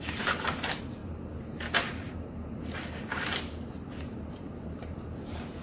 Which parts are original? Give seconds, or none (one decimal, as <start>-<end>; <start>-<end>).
none